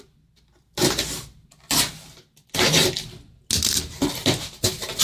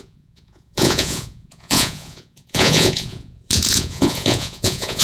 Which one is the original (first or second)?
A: first